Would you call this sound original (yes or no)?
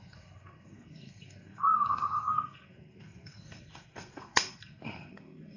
no